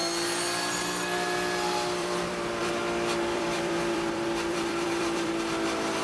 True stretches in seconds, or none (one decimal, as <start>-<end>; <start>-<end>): 0.0-2.0; 2.7-3.3; 5.3-6.0